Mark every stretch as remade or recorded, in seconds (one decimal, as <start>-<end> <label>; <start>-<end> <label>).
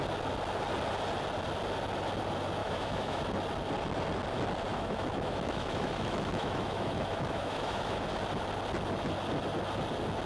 0.0-2.6 recorded; 2.6-3.2 remade; 3.2-4.7 recorded; 4.7-8.1 remade; 8.1-10.3 recorded